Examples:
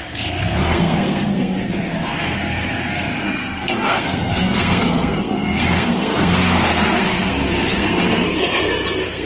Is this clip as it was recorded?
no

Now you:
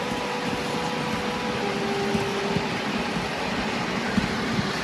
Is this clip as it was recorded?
yes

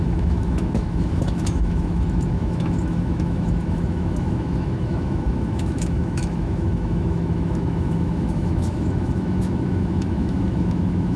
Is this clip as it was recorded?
no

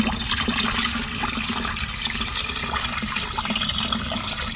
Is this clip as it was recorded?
yes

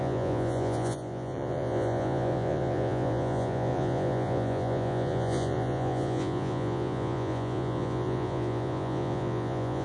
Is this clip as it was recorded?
no